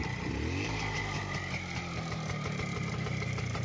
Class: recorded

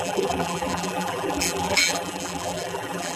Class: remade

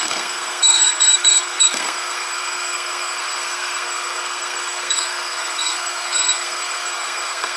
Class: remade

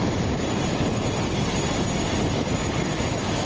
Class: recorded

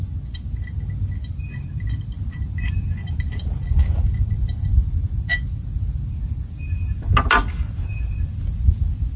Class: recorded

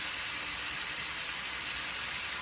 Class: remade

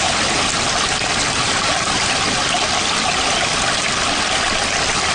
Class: recorded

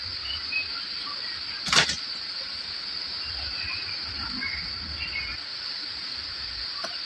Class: recorded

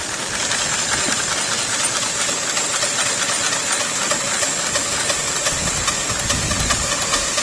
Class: recorded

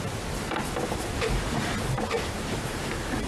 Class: recorded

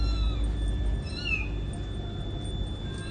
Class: recorded